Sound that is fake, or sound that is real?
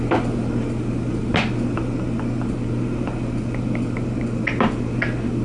real